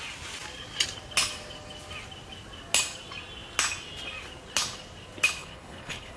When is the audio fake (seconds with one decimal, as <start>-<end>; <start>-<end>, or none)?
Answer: 5.4-6.2